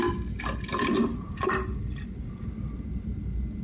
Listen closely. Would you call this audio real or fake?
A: real